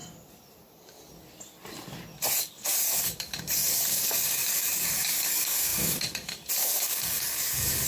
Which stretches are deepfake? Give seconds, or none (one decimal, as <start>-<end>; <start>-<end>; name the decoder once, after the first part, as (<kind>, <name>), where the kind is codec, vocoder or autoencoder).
2.5-7.9 (codec, DAC)